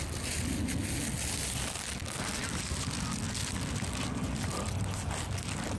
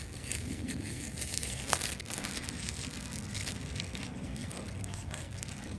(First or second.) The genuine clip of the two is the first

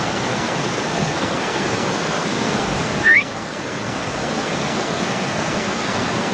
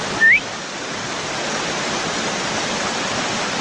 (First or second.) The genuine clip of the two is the second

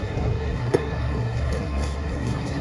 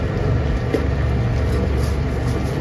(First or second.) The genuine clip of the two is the second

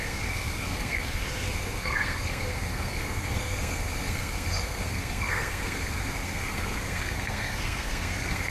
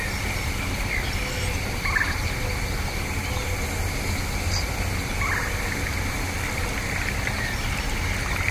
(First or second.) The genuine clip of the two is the second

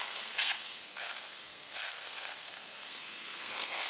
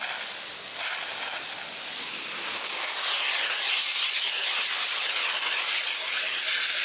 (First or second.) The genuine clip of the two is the second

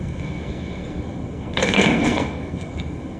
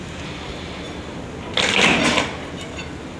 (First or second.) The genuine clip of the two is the second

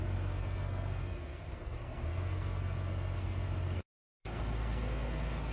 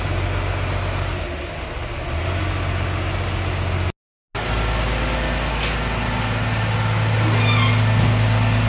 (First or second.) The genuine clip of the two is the second